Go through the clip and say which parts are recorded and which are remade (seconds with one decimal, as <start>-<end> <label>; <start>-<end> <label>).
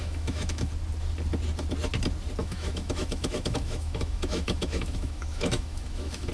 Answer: 0.0-0.7 remade; 0.7-2.4 recorded; 2.4-6.3 remade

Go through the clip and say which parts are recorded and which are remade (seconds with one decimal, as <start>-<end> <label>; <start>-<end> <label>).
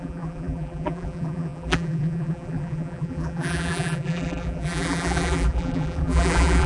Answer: 0.0-6.7 remade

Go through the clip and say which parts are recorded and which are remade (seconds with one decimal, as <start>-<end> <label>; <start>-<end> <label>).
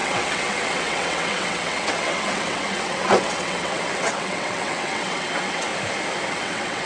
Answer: 0.0-5.7 remade; 5.7-6.3 recorded; 6.3-6.9 remade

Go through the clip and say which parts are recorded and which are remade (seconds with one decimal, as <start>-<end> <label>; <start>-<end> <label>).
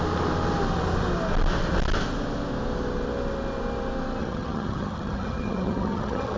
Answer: 0.0-4.2 recorded; 4.2-6.4 remade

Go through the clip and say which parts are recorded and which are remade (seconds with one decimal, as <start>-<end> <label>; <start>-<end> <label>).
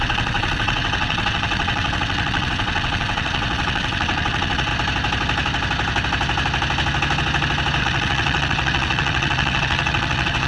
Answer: 0.0-4.7 remade; 4.7-7.8 recorded; 7.8-10.5 remade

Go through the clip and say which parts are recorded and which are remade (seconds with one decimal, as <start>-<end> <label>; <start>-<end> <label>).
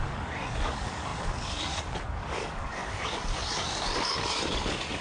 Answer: 0.0-5.0 remade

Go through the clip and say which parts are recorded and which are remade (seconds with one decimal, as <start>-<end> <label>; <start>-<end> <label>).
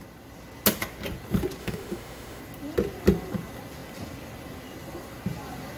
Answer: 0.0-1.6 recorded; 1.6-2.4 remade; 2.4-5.8 recorded